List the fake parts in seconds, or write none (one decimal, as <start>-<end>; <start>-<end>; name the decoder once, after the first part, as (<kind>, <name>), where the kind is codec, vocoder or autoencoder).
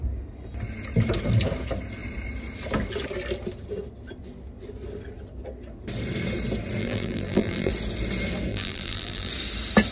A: 6.8-7.7 (vocoder, BigVGAN v2); 8.5-9.3